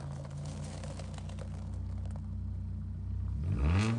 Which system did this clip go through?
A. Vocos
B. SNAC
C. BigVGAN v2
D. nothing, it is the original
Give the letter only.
D